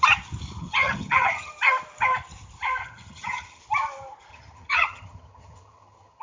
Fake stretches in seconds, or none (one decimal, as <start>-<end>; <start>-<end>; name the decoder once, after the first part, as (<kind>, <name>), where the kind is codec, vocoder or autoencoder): 0.6-1.5 (vocoder, HiFi-GAN); 2.8-3.6; 4.3-6.2